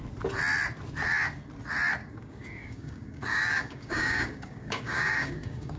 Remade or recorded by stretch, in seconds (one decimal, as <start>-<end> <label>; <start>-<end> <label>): 0.0-2.0 recorded; 2.0-5.8 remade

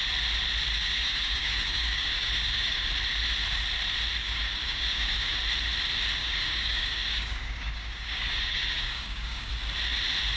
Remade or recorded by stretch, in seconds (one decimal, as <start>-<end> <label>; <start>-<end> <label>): 0.0-0.7 recorded; 0.7-2.9 remade; 2.9-4.2 recorded; 4.2-5.4 remade; 5.4-6.2 recorded; 6.2-9.5 remade; 9.5-10.4 recorded

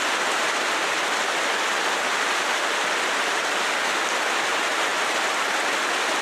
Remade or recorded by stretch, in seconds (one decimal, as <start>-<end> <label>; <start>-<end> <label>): 0.0-6.2 recorded

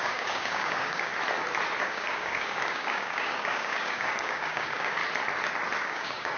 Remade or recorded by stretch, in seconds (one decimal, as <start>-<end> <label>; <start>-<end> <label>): 0.0-1.1 remade; 1.1-1.8 recorded; 1.8-5.0 remade; 5.0-5.8 recorded; 5.8-6.4 remade

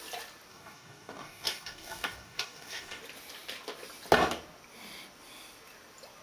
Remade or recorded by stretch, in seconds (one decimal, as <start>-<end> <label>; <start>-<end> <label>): 0.0-0.5 recorded; 0.5-3.0 remade; 3.0-6.2 recorded

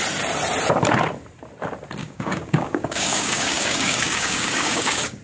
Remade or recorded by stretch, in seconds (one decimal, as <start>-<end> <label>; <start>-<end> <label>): 0.0-2.0 recorded; 2.0-5.2 remade

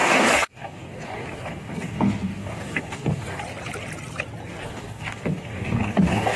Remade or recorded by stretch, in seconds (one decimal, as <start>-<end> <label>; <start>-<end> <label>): 0.0-3.4 remade; 3.4-4.5 recorded; 4.5-6.4 remade